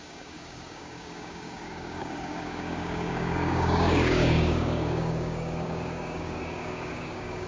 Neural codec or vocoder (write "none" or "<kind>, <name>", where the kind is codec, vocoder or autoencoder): codec, DAC